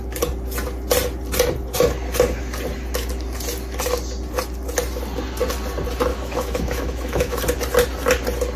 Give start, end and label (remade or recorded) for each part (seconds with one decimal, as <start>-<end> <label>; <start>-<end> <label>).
0.0-6.1 recorded; 6.1-7.4 remade; 7.4-8.6 recorded